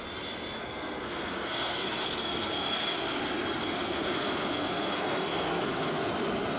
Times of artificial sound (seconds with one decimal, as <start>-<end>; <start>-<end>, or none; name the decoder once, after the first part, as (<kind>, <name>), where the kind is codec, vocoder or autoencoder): 0.6-3.2 (codec, SNAC); 3.6-6.1